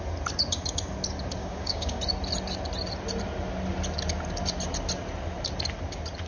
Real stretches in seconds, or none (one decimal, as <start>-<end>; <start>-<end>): 0.0-1.4; 2.0-6.3